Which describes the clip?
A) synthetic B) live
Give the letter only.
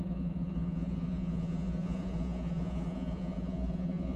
A